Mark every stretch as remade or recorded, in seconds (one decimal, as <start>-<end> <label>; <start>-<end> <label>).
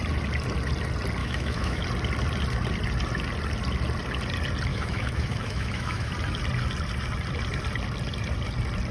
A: 0.0-1.2 recorded; 1.2-1.8 remade; 1.8-4.7 recorded; 4.7-6.1 remade; 6.1-8.9 recorded